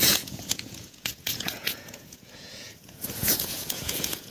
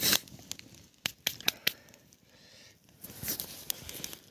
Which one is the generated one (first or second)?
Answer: first